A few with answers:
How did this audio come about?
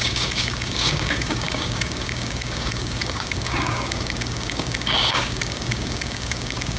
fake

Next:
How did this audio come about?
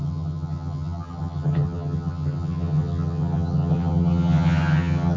fake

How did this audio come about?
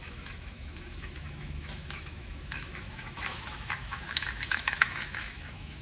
fake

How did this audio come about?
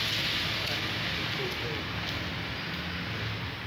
real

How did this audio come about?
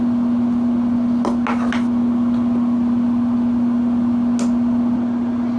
real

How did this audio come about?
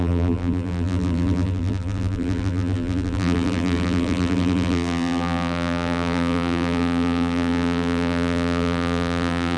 fake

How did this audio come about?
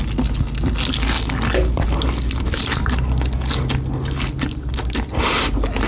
real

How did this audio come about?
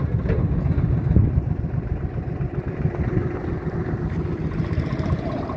real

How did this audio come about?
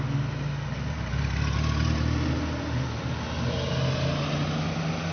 real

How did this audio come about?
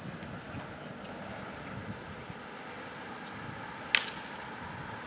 real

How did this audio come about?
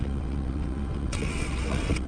fake